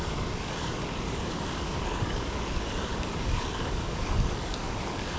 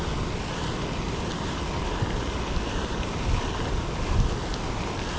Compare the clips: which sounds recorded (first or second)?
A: second